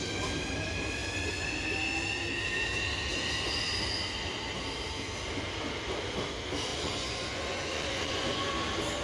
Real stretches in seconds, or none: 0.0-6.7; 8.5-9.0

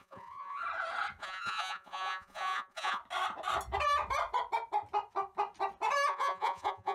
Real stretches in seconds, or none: 0.6-1.2; 3.0-6.1

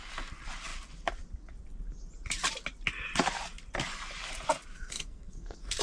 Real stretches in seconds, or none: 0.0-4.7